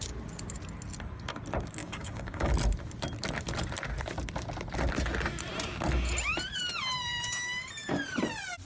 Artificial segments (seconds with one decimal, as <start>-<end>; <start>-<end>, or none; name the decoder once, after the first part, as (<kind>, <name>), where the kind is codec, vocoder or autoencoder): 1.8-2.5 (codec, DAC)